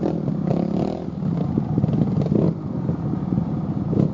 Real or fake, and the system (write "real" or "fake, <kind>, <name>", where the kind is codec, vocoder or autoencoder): real